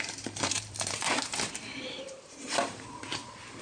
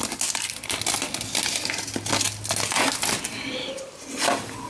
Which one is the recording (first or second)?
second